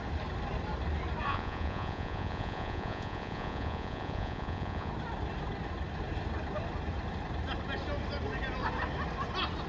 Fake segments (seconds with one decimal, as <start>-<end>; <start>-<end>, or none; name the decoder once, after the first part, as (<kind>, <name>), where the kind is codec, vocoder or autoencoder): 1.3-4.9 (vocoder, Vocos)